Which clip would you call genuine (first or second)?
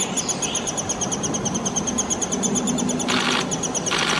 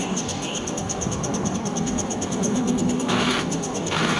first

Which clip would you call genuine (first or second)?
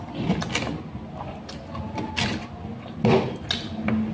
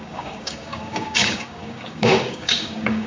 first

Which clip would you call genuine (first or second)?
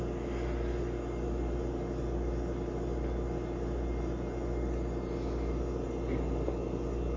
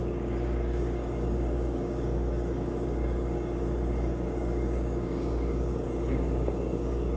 first